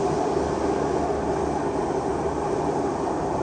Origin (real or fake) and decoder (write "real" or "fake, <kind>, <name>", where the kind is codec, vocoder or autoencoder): real